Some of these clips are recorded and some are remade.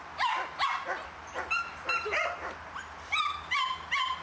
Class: recorded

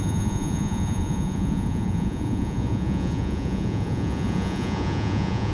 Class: remade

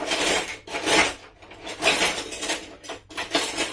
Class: recorded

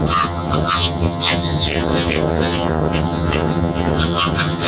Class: remade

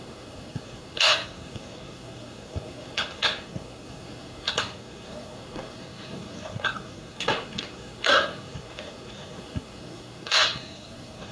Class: remade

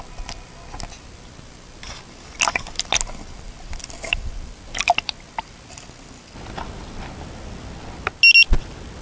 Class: recorded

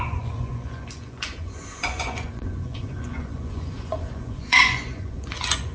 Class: remade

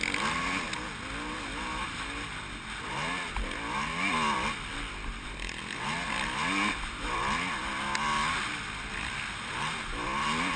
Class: recorded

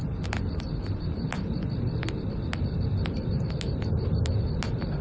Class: recorded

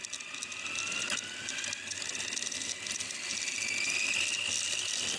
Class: recorded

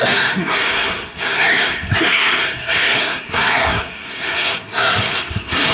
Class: remade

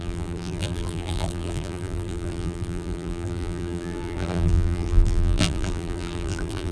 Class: remade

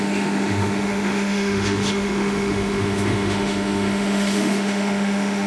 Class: remade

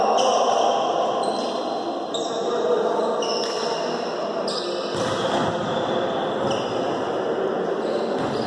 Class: recorded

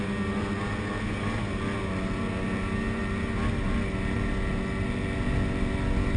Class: recorded